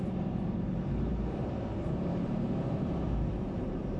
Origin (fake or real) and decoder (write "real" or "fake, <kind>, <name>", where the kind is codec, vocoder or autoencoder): fake, vocoder, BigVGAN v2